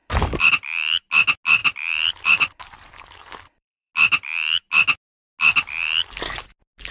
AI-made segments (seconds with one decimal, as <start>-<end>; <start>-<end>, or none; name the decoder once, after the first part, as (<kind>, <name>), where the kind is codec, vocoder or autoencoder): 0.0-0.5 (vocoder, BigVGAN v2); 1.6-3.9